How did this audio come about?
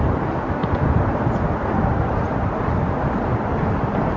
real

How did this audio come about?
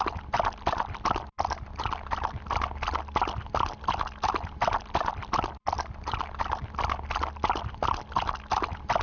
real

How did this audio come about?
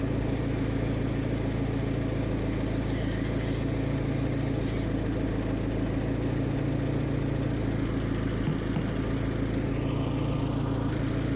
real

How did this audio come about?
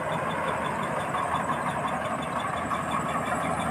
real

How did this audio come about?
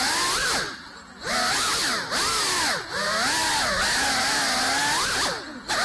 real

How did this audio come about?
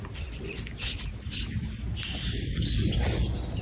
real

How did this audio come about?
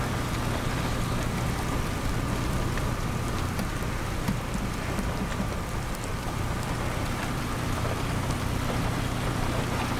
real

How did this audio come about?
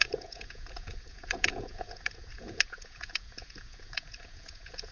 fake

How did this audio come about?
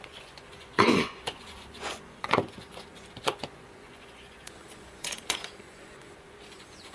fake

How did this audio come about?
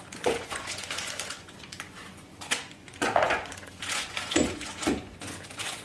fake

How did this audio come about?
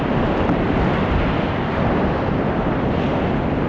real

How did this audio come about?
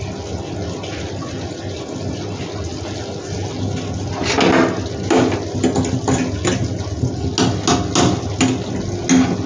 real